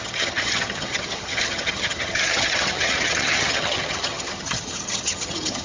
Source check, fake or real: fake